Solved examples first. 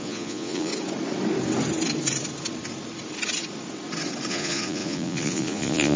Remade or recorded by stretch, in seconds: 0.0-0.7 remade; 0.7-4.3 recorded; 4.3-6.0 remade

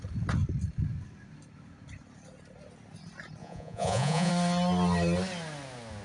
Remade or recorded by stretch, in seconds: 0.0-3.4 recorded; 3.4-4.3 remade; 4.3-6.0 recorded

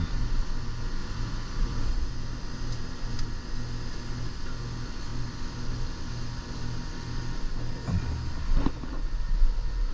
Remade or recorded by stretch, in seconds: 0.0-1.0 recorded; 1.0-2.1 remade; 2.1-9.9 recorded

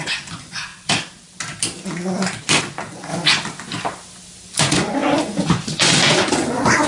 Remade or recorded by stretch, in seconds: 0.0-0.7 remade; 0.7-2.6 recorded; 2.6-3.1 remade; 3.1-4.6 recorded; 4.6-6.9 remade

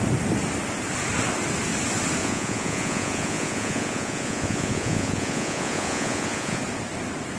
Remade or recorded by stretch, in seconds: 0.0-2.2 recorded; 2.2-6.6 remade; 6.6-7.4 recorded

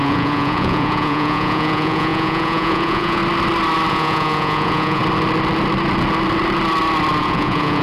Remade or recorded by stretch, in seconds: 0.0-3.2 remade; 3.2-3.9 recorded; 3.9-5.0 remade; 5.0-7.2 recorded; 7.2-7.8 remade

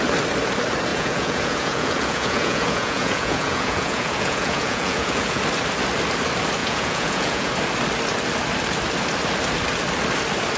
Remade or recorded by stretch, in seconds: 0.0-0.9 recorded; 0.9-5.4 remade; 5.4-6.6 recorded; 6.6-7.5 remade; 7.5-10.6 recorded